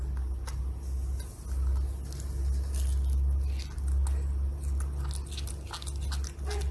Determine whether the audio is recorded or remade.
recorded